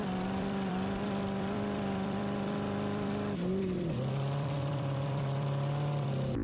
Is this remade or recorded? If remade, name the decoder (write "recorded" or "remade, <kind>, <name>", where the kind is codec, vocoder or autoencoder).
remade, vocoder, BigVGAN v2